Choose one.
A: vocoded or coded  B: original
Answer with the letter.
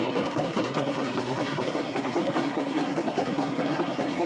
A